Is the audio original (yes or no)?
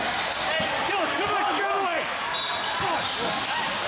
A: yes